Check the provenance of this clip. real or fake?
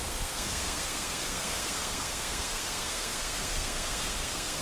fake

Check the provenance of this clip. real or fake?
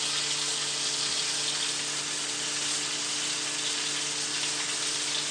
real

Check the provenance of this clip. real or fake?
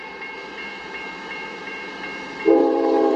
fake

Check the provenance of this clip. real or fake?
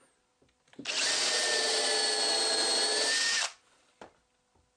real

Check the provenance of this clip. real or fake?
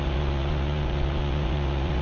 fake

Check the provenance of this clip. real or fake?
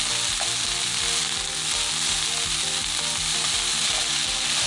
real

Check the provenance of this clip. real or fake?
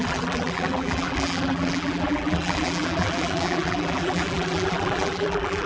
fake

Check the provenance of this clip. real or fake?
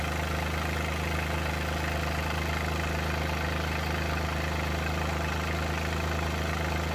real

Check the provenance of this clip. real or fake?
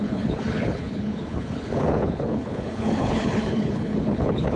fake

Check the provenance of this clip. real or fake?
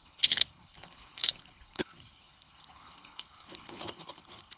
fake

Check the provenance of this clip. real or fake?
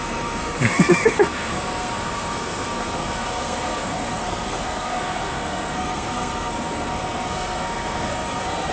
fake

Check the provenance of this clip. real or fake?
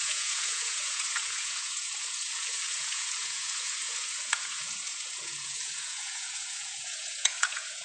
fake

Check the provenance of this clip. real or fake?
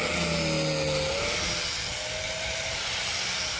real